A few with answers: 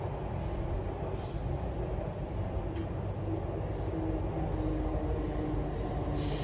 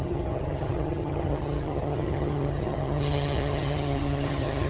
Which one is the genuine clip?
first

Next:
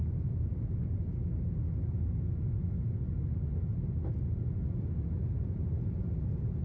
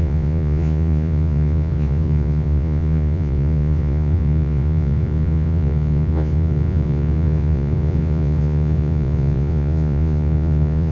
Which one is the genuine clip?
first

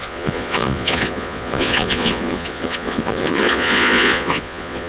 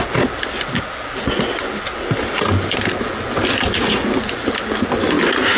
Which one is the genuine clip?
second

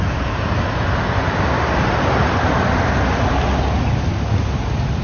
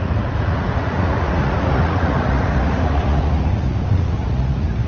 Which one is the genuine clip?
first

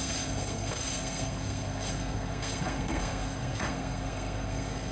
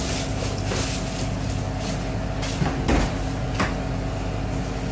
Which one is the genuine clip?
second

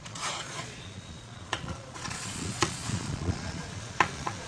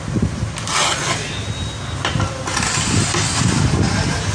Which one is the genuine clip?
second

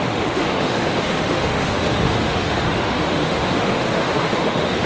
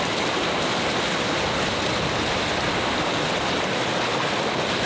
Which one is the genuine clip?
second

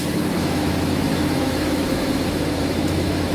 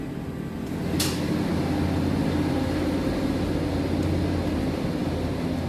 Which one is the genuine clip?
second